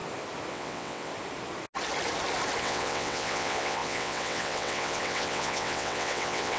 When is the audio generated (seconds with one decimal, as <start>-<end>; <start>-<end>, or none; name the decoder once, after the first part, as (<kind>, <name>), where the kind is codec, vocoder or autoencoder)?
0.5-1.1 (vocoder, WaveNeXt); 2.6-6.6

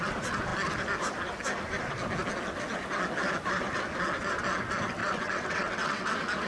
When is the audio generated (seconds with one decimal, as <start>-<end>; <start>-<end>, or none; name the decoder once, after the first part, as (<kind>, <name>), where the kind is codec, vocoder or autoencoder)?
5.0-6.1 (vocoder, WaveNeXt)

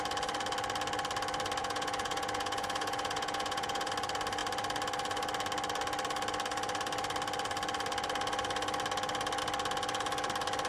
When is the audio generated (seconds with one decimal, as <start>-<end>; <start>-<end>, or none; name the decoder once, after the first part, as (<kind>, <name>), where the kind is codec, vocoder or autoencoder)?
1.6-3.9 (vocoder, Vocos)

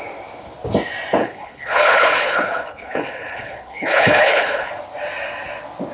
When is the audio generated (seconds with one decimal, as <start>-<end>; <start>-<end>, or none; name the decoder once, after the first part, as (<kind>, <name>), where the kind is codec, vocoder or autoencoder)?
1.2-4.7 (codec, HILCodec)

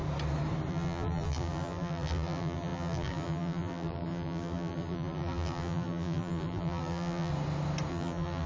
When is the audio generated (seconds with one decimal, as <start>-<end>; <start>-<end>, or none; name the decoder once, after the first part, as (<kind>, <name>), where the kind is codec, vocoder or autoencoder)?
0.7-7.3 (vocoder, BigVGAN v2); 7.9-8.5

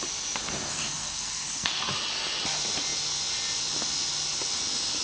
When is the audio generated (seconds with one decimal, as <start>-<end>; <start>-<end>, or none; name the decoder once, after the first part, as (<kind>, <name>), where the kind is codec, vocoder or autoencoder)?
0.7-1.9 (codec, SNAC)